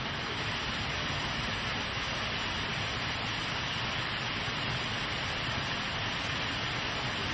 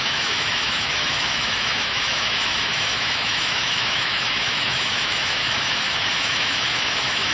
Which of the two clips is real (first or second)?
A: first